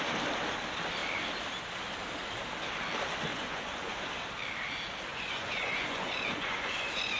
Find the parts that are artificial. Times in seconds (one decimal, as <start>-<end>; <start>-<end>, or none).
3.3-4.1; 5.1-7.2